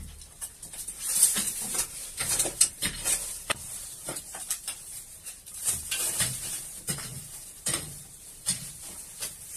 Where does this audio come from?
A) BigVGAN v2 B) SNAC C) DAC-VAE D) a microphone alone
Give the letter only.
A